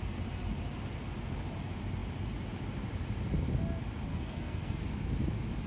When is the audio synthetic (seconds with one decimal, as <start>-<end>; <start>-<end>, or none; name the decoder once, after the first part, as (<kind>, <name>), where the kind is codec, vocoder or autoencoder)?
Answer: 4.1-4.8 (codec, SNAC)